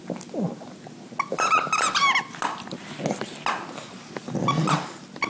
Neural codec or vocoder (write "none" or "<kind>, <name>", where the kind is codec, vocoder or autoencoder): none